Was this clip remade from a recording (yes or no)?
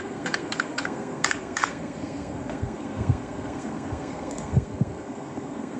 yes